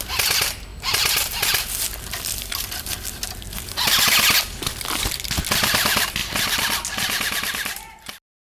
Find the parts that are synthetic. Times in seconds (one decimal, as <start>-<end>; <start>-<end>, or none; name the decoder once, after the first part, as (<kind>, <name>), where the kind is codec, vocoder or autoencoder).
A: 6.2-8.0 (vocoder, BigVGAN v2)